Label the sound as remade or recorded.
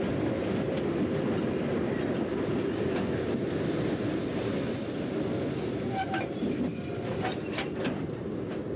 recorded